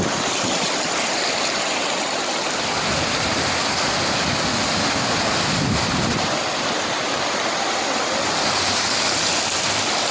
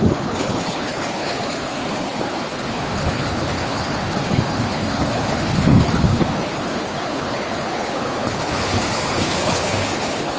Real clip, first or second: first